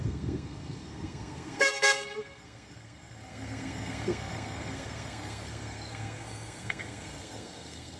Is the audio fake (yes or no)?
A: yes